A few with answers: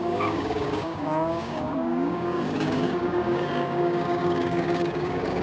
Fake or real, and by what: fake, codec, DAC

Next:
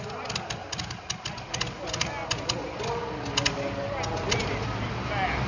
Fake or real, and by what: real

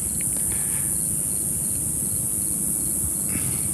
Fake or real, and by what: real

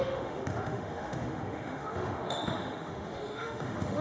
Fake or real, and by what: fake, autoencoder, DAC-VAE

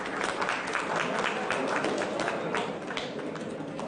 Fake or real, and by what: real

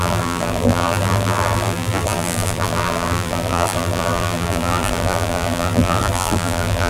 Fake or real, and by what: fake, vocoder, BigVGAN v2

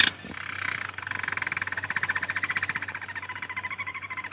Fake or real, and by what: real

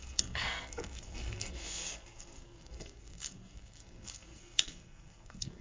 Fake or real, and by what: fake, codec, SNAC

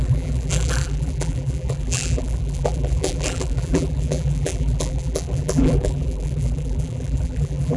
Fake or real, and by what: fake, vocoder, BigVGAN v2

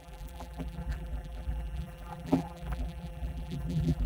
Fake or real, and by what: fake, vocoder, BigVGAN v2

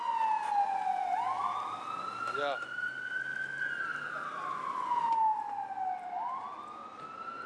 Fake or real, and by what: real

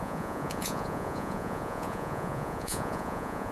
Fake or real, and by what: fake, vocoder, Vocos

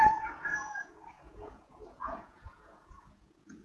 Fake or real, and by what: fake, vocoder, Vocos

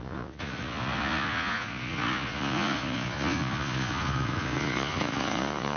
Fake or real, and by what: fake, vocoder, Vocos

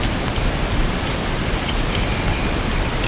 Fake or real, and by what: real